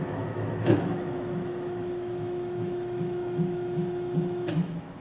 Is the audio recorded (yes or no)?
no